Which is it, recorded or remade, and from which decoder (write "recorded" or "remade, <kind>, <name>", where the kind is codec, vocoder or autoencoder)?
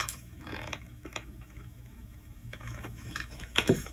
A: remade, autoencoder, DAC-VAE